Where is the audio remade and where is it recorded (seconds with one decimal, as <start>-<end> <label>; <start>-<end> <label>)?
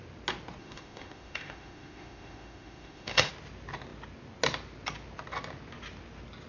0.0-0.6 recorded; 0.6-3.3 remade; 3.3-6.5 recorded